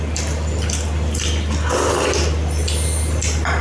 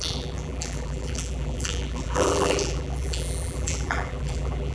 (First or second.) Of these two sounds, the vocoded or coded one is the second